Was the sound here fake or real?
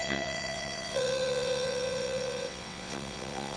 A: fake